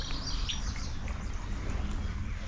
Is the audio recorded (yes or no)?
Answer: yes